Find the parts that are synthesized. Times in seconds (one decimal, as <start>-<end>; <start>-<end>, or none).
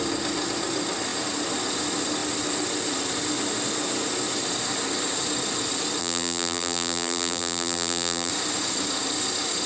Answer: 6.0-8.3